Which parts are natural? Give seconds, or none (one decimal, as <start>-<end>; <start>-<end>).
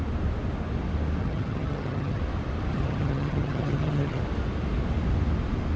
0.0-1.2; 2.2-2.7; 4.2-5.8